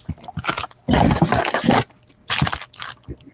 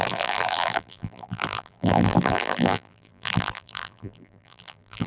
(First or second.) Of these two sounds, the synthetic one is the second